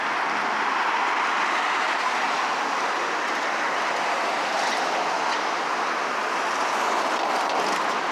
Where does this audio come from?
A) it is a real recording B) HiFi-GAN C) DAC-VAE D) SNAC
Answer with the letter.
A